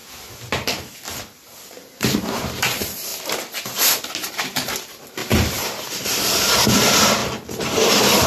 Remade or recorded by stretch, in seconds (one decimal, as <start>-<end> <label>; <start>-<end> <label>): 0.0-1.8 recorded; 1.8-3.1 remade; 3.1-4.3 recorded; 4.3-7.2 remade; 7.2-8.3 recorded

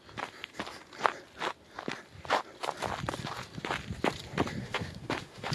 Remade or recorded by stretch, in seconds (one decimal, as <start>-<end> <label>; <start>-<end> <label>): 0.0-4.6 recorded; 4.6-5.5 remade

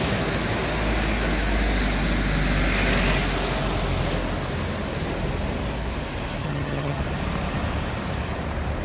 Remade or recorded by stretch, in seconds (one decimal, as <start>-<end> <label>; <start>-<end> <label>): 0.0-6.4 recorded; 6.4-7.0 remade; 7.0-8.8 recorded

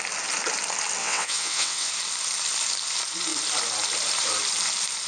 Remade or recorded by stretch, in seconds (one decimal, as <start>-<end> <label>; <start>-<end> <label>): 0.0-1.0 recorded; 1.0-1.9 remade; 1.9-5.1 recorded